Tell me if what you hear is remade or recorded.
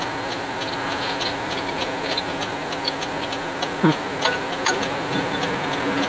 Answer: recorded